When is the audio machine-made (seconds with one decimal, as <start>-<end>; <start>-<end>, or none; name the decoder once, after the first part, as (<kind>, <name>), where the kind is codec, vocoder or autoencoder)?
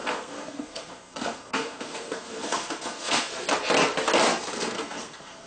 0.0-3.3 (codec, SNAC); 4.3-5.5